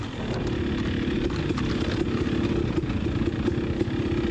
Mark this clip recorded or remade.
recorded